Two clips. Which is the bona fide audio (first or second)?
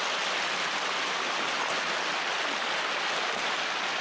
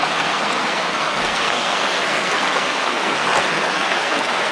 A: first